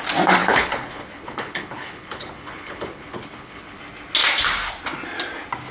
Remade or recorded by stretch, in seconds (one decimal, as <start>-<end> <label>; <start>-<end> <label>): 0.0-0.4 recorded; 0.4-3.8 remade; 3.8-5.7 recorded